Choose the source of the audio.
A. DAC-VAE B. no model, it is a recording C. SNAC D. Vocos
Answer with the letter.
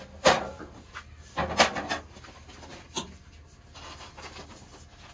B